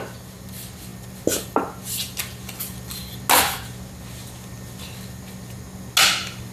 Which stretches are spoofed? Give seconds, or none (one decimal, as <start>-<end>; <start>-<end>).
none